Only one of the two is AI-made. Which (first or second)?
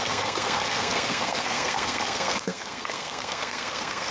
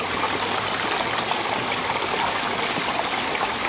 first